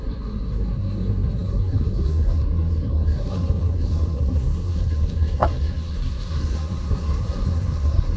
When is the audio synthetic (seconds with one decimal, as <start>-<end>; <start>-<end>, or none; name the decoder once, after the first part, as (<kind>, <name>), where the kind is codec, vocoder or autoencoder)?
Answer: 0.0-8.2 (codec, SNAC)